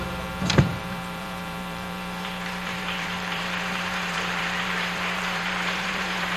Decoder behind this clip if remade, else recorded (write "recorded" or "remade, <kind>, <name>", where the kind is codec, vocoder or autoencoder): remade, vocoder, BigVGAN v2